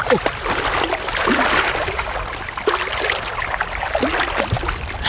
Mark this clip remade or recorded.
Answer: recorded